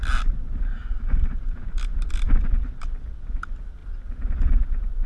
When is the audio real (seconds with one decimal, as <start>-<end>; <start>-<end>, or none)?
0.0-5.1